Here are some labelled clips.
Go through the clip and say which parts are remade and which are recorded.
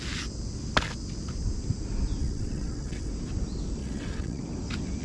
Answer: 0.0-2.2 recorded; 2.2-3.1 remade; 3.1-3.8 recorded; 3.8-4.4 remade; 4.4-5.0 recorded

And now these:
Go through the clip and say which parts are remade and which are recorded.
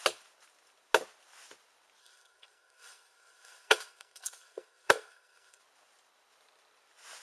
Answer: 0.0-2.0 recorded; 2.0-5.6 remade; 5.6-7.2 recorded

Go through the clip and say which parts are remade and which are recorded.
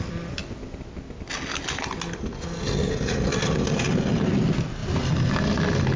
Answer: 0.0-6.0 recorded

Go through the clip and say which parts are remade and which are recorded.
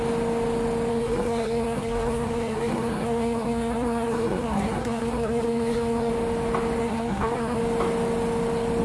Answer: 0.0-0.9 recorded; 0.9-6.1 remade; 6.1-6.8 recorded; 6.8-7.6 remade; 7.6-8.8 recorded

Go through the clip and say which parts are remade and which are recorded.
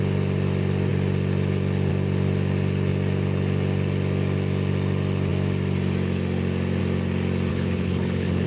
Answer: 0.0-7.5 recorded; 7.5-8.5 remade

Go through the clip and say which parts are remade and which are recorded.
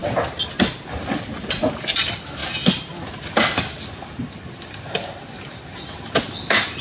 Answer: 0.0-6.8 recorded